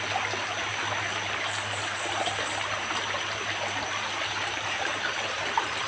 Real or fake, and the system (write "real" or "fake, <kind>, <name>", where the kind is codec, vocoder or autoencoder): real